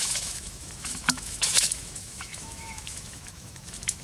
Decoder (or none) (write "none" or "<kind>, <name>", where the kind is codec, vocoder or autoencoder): autoencoder, DAC-VAE